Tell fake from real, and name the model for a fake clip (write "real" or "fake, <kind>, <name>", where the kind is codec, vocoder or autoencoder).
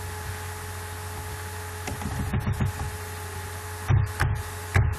real